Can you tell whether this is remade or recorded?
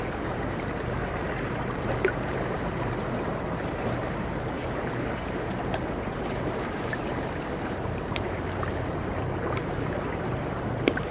remade